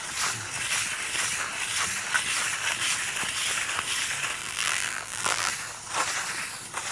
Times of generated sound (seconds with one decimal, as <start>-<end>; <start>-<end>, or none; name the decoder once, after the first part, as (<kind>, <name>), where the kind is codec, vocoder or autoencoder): 4.4-5.5 (vocoder, BigVGAN v2)

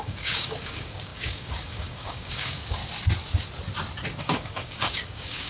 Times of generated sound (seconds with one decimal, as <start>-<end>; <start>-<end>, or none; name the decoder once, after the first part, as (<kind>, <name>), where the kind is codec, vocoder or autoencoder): 0.0-2.8 (codec, DAC); 4.2-5.5

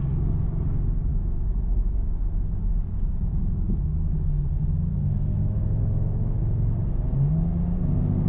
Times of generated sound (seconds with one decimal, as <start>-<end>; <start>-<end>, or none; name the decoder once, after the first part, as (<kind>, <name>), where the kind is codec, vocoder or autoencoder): 1.1-2.2 (autoencoder, DAC-VAE); 3.4-6.4

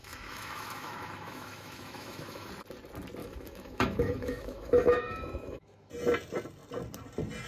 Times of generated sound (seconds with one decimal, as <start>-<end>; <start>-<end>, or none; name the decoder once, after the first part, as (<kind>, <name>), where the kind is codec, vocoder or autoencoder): 0.0-2.5 (autoencoder, DAC-VAE); 3.2-5.9